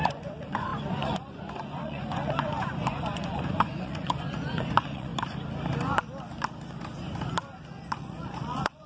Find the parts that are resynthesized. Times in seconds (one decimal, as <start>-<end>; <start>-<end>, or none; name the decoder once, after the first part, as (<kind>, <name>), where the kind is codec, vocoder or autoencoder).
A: 0.0-5.1 (vocoder, Vocos); 8.0-8.9